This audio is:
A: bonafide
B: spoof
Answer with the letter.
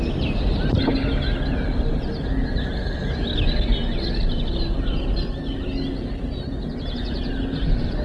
A